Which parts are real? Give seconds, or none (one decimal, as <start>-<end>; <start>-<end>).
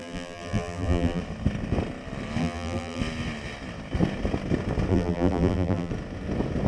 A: 1.2-2.4; 3.0-4.9; 5.9-6.7